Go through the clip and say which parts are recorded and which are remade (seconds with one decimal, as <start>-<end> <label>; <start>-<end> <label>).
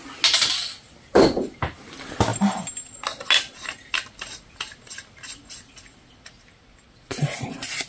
0.0-7.9 recorded